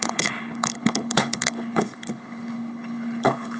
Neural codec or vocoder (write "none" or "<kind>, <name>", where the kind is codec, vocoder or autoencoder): codec, HILCodec